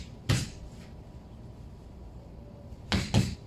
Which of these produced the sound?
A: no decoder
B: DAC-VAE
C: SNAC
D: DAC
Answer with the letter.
A